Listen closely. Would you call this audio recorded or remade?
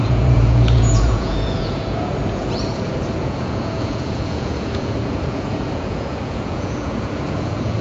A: remade